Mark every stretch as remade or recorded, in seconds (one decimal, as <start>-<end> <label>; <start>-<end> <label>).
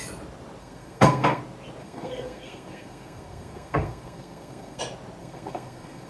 0.0-0.6 recorded; 0.6-1.4 remade; 1.4-1.8 recorded; 1.8-4.8 remade; 4.8-5.2 recorded; 5.2-6.1 remade